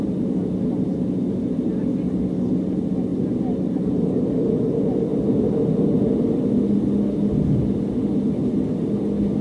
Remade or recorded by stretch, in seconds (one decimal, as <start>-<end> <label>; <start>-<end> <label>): 0.0-9.4 recorded

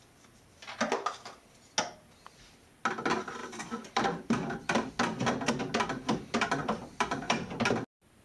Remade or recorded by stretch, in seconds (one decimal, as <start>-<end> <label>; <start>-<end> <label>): 0.0-3.4 recorded; 3.4-4.9 remade; 4.9-6.6 recorded; 6.6-7.5 remade; 7.5-8.2 recorded

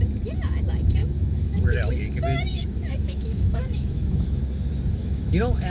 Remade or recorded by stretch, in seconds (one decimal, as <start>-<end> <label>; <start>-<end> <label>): 0.0-1.0 recorded; 1.0-1.9 remade; 1.9-2.5 recorded; 2.5-4.4 remade; 4.4-5.0 recorded; 5.0-5.7 remade

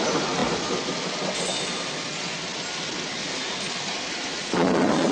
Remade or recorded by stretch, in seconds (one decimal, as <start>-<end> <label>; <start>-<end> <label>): 0.0-4.4 recorded; 4.4-5.1 remade

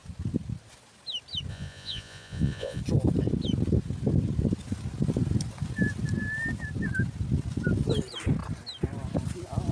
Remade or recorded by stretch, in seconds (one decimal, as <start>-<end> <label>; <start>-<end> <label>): 0.0-1.5 recorded; 1.5-2.8 remade; 2.8-9.7 recorded